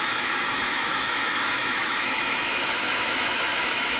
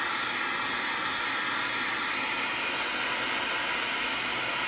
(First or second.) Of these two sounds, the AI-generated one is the first